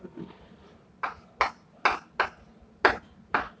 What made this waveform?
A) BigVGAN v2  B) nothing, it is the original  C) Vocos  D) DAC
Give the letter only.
B